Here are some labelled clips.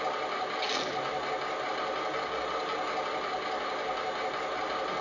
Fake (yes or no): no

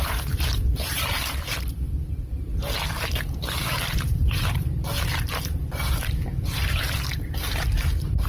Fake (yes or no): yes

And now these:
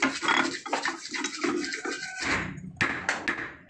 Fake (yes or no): no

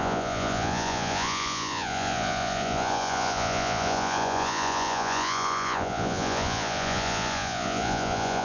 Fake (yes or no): yes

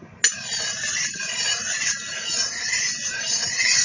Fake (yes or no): no